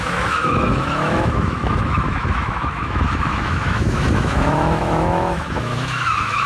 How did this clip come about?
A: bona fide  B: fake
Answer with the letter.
B